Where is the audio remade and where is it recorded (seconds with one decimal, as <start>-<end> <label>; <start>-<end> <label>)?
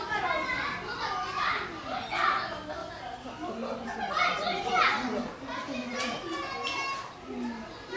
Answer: 0.0-8.0 recorded